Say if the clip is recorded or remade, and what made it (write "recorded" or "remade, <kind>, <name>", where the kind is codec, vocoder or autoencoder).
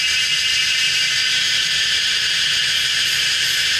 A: recorded